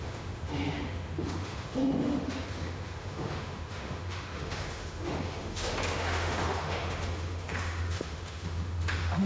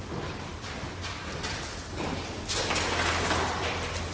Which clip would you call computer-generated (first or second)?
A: first